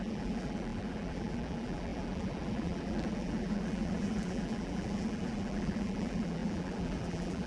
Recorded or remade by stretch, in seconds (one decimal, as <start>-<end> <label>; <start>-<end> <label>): 0.0-7.5 remade